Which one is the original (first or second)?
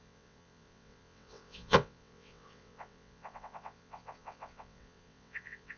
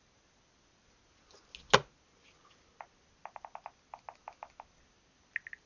second